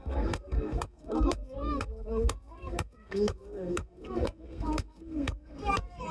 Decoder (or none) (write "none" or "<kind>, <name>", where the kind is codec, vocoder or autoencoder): codec, SNAC